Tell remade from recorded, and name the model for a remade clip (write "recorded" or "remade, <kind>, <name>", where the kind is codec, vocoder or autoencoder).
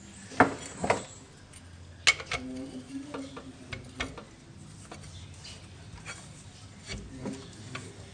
recorded